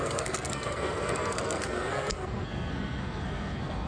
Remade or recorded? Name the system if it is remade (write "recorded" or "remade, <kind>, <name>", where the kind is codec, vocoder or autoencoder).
remade, codec, SNAC